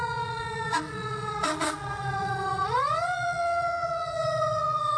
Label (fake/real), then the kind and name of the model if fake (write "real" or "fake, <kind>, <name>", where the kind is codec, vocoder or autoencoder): fake, vocoder, Vocos